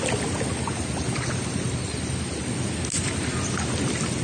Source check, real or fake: real